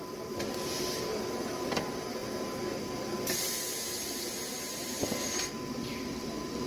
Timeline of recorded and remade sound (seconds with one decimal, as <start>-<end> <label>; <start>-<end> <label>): 0.0-6.7 recorded